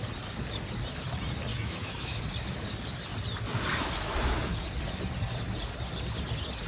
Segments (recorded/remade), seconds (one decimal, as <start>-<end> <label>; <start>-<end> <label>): 0.0-1.5 recorded; 1.5-2.2 remade; 2.2-6.7 recorded